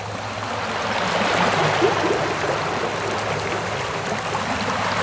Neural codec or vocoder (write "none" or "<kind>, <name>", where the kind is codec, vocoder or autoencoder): none